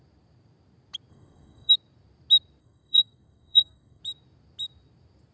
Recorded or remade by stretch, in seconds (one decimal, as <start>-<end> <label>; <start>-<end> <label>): 0.0-1.1 recorded; 1.1-1.7 remade; 1.7-2.6 recorded; 2.6-4.0 remade; 4.0-5.3 recorded